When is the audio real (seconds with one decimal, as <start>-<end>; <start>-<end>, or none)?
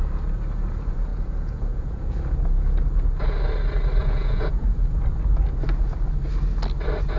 0.0-1.1; 2.0-4.0; 5.0-7.2